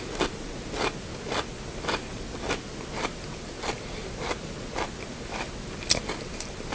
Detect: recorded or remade recorded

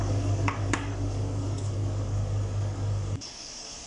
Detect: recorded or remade remade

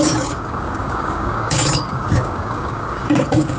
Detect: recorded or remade remade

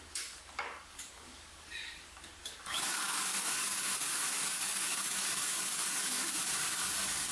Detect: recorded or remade remade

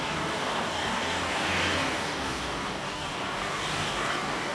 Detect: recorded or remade remade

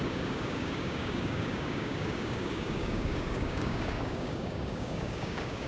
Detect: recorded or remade remade